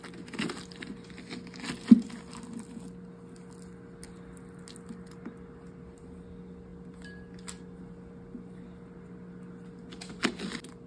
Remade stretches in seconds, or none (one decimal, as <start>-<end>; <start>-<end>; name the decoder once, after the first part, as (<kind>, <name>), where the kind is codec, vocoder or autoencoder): none